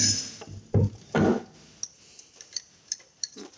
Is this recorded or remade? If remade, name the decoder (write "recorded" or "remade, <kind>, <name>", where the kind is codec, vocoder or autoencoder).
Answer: recorded